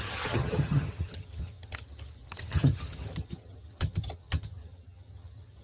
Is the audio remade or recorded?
remade